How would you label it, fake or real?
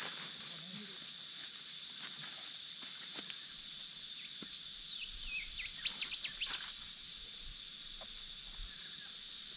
real